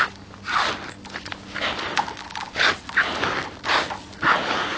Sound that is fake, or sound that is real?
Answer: real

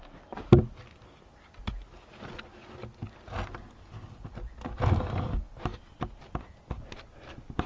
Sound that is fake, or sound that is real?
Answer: real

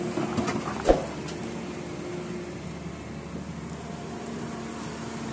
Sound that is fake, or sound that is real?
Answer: real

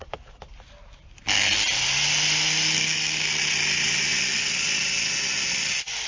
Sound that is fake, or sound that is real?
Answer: real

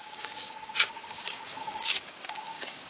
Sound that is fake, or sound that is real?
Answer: fake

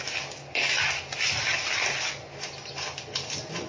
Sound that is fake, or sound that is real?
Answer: real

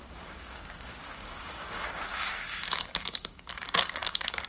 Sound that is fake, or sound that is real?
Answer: fake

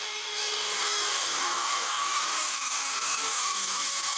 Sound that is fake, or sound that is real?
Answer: fake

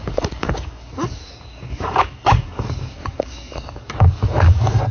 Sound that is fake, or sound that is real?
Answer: fake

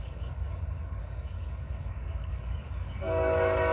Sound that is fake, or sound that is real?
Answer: fake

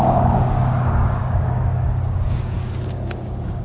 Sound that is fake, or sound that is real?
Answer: fake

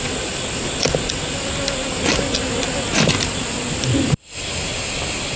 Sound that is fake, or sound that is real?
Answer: real